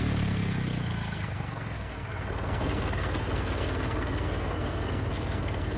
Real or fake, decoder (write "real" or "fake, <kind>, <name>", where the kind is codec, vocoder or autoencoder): fake, codec, SNAC